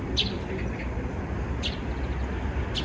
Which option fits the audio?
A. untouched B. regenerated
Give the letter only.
A